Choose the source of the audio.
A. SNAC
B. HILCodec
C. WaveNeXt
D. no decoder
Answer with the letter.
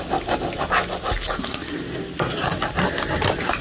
D